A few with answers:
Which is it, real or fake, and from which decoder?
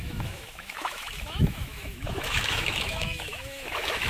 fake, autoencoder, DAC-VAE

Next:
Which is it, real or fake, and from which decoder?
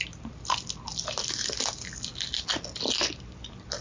real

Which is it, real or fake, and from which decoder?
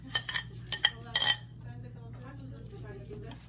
real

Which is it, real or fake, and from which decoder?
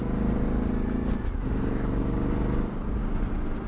real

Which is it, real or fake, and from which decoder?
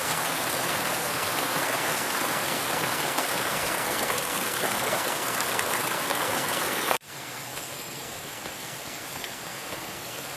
fake, codec, SNAC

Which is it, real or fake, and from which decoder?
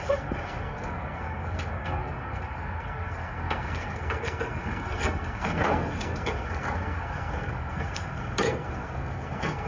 fake, codec, SNAC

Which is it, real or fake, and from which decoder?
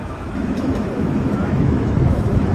fake, autoencoder, DAC-VAE